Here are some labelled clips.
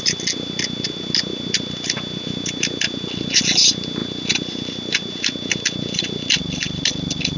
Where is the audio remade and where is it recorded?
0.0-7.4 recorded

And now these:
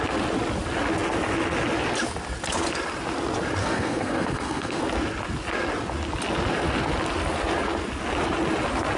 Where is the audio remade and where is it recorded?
0.0-3.6 recorded; 3.6-4.8 remade; 4.8-9.0 recorded